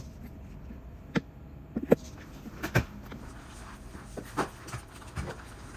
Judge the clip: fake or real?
real